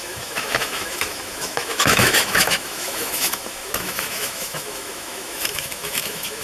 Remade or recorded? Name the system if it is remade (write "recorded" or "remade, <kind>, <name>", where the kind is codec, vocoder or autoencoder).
remade, autoencoder, DAC-VAE